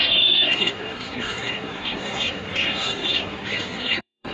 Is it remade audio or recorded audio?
remade